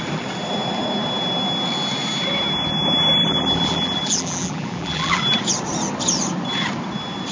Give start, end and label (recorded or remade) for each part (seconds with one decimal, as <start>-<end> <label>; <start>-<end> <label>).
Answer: 0.0-3.2 recorded; 3.2-5.2 remade; 5.2-7.3 recorded